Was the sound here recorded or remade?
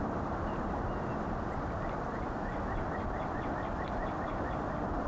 recorded